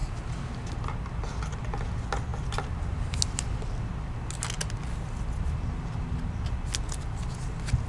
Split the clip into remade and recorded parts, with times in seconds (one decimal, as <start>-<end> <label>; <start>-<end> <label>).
0.0-7.9 recorded